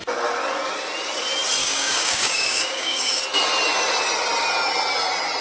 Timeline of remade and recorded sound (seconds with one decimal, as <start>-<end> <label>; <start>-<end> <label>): 0.0-1.6 recorded; 1.6-3.2 remade; 3.2-5.4 recorded